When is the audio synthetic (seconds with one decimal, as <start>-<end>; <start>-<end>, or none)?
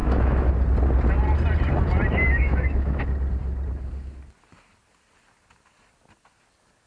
0.0-0.5; 2.2-3.0